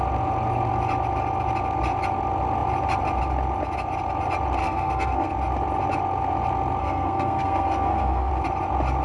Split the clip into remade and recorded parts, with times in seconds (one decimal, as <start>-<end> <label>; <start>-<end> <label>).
0.0-4.6 recorded; 4.6-5.3 remade; 5.3-6.8 recorded; 6.8-8.3 remade; 8.3-9.0 recorded

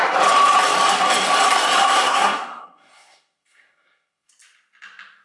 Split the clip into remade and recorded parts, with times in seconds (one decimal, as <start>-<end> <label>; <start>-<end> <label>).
0.0-1.9 recorded; 1.9-4.3 remade; 4.3-5.2 recorded